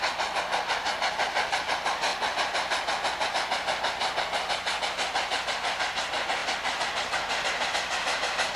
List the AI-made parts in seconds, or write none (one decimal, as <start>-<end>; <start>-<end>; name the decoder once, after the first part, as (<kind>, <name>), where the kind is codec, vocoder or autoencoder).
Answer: none